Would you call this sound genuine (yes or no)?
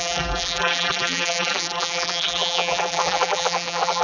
no